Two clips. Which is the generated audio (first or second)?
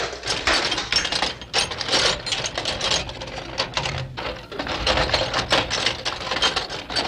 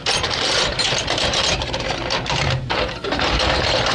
second